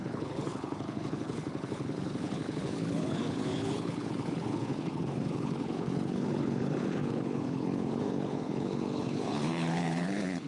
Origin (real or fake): fake